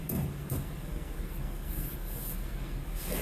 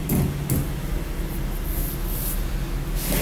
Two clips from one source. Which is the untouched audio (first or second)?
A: second